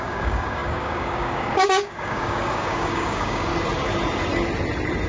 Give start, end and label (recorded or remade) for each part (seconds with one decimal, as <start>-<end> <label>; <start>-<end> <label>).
0.0-3.5 remade; 3.5-5.1 recorded

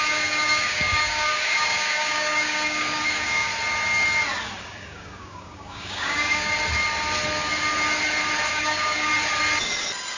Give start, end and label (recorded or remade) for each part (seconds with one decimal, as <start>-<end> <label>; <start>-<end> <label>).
0.0-3.5 remade; 3.5-4.6 recorded; 4.6-6.5 remade; 6.5-8.5 recorded; 8.5-9.1 remade; 9.1-10.2 recorded

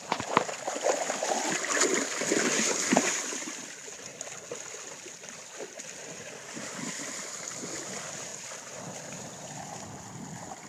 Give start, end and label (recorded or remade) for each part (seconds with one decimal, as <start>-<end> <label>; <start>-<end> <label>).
0.0-10.7 recorded

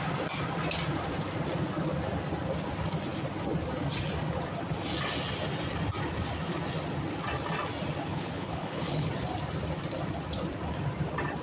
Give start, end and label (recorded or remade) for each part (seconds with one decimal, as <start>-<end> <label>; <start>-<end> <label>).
0.0-8.1 recorded; 8.1-9.1 remade; 9.1-11.4 recorded